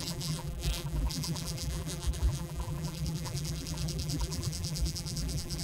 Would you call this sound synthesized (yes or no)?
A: yes